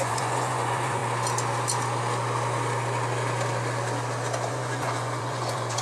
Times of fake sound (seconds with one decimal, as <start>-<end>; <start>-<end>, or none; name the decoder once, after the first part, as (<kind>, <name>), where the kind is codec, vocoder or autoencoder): 0.0-1.0 (vocoder, Vocos); 4.5-5.8